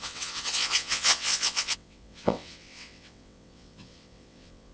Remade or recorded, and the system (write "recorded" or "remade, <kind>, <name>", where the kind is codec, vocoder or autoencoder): remade, vocoder, WaveNeXt